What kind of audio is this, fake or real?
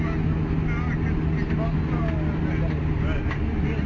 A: real